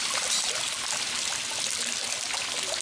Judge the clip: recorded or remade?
recorded